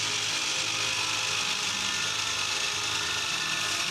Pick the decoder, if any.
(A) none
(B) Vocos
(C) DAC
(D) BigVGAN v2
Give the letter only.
A